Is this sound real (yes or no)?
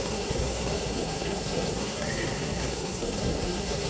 no